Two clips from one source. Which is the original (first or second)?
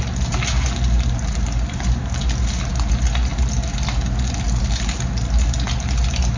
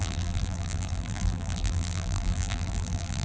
first